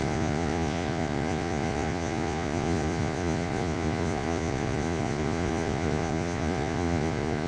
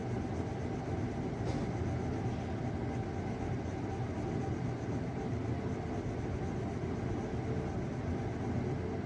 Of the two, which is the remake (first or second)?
first